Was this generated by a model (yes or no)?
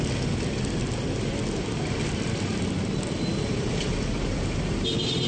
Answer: no